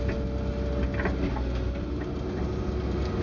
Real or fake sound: real